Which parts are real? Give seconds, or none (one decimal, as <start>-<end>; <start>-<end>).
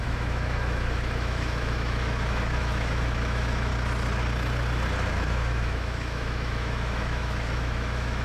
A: 3.7-5.1